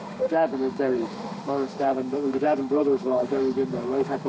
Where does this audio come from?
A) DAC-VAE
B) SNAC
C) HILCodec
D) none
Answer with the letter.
A